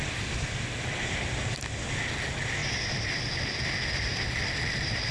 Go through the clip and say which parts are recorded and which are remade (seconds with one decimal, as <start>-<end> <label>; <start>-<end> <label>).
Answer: 0.0-2.6 recorded; 2.6-5.1 remade